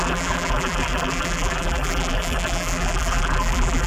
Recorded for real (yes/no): no